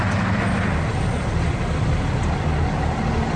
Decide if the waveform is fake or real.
real